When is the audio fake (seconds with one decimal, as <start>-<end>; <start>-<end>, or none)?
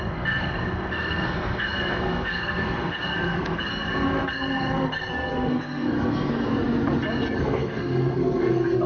0.0-3.7; 4.3-6.5; 7.4-8.9